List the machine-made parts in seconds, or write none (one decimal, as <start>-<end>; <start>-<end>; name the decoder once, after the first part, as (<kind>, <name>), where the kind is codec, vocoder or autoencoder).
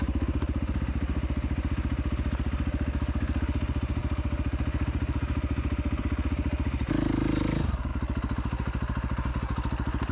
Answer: none